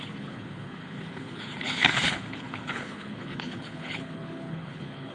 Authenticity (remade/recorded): remade